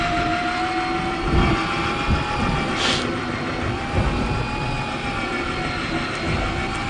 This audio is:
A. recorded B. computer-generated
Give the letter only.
A